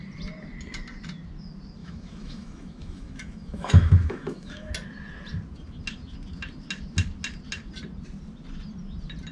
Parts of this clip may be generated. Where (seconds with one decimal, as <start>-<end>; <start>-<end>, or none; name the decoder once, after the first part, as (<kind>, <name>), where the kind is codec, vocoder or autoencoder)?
1.8-4.7 (autoencoder, DAC-VAE)